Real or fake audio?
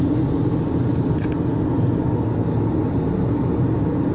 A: real